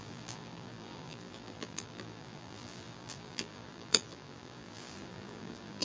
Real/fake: fake